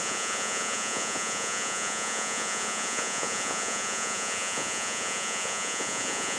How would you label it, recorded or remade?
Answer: remade